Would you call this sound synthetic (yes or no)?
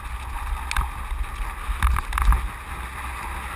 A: no